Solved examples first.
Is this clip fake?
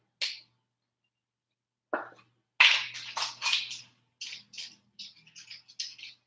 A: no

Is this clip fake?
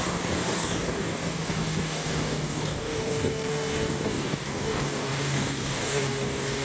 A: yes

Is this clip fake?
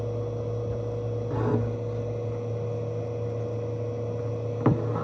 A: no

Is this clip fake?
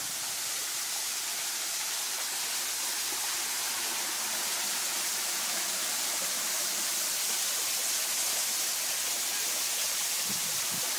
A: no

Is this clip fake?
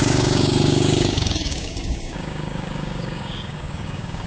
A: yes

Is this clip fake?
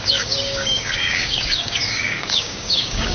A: yes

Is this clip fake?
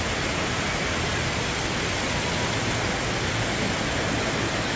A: no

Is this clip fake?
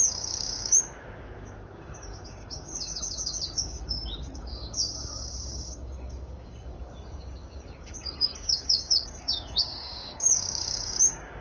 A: yes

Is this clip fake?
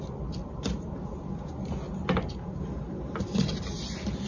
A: no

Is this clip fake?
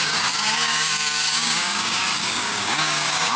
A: yes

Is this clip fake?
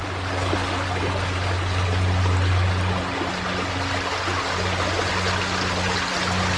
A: no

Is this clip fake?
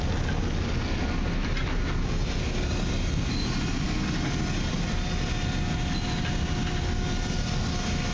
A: no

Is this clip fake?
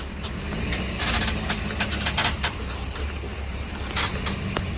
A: no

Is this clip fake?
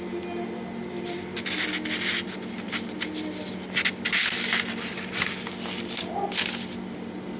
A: no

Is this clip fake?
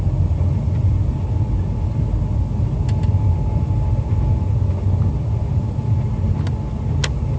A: no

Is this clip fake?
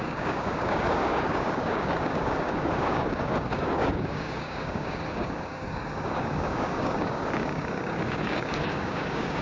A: yes